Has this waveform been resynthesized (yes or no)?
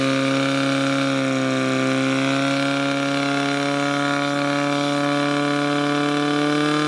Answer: no